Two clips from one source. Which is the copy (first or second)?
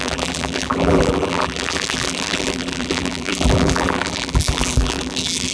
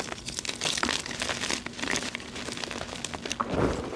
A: first